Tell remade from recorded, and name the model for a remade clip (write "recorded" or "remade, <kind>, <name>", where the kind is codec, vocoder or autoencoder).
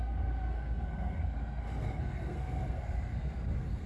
remade, codec, SNAC